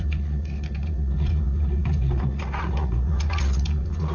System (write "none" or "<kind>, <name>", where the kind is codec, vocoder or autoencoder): vocoder, Vocos